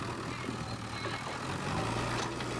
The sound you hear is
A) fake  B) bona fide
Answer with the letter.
B